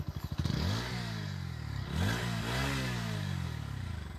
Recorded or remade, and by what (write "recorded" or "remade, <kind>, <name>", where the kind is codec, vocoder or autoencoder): remade, codec, DAC